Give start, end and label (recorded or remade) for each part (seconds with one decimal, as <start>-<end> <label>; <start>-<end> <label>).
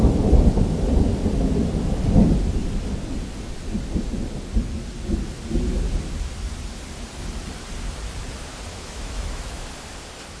0.0-8.7 recorded; 8.7-9.7 remade; 9.7-10.4 recorded